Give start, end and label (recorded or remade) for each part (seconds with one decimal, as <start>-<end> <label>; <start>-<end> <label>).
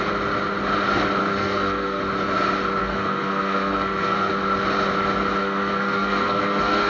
0.0-1.2 recorded; 1.2-2.0 remade; 2.0-2.8 recorded; 2.8-4.3 remade; 4.3-5.4 recorded; 5.4-6.9 remade